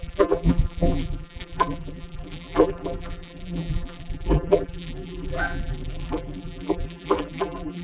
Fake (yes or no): yes